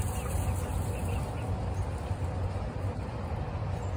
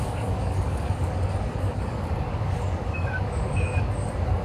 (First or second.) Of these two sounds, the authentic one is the first